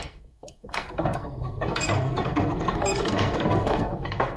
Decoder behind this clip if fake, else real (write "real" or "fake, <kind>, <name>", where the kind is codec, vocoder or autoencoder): fake, codec, SNAC